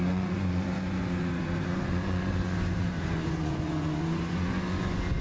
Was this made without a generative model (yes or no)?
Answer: no